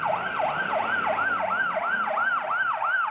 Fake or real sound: real